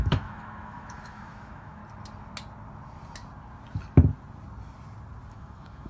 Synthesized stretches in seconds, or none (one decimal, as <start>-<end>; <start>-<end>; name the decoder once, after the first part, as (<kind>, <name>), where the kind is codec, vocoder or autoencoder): 0.0-1.8 (autoencoder, DAC-VAE); 5.3-5.9